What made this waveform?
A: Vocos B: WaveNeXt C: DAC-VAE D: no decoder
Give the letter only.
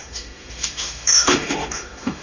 C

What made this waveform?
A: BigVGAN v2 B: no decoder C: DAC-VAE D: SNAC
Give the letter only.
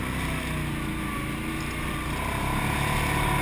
B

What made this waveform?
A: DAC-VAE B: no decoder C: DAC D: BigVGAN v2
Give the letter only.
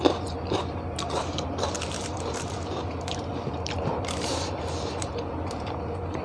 D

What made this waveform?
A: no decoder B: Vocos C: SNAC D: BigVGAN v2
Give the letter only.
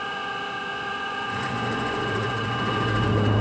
B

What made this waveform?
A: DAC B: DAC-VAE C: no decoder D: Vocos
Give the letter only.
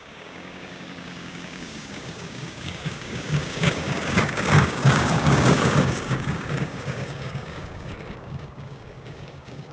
A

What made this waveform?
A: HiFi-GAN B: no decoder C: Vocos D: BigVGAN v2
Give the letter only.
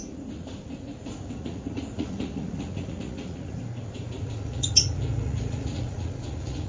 C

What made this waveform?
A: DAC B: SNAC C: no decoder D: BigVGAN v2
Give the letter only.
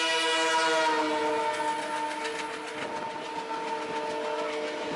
C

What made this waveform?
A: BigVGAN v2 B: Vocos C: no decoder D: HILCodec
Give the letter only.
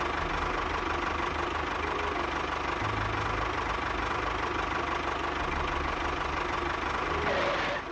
C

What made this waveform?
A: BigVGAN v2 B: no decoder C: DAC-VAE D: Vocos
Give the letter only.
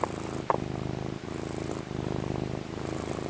A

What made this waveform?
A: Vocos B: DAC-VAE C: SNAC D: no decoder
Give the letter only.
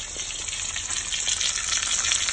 D